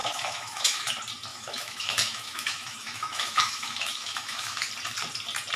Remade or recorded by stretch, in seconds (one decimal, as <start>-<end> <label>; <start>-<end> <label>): 0.0-0.9 remade; 0.9-1.3 recorded; 1.3-4.7 remade; 4.7-5.6 recorded